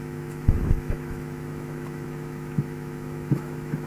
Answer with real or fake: fake